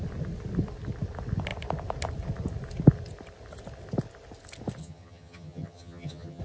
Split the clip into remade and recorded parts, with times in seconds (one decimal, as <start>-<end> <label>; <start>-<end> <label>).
0.0-4.8 recorded; 4.8-6.4 remade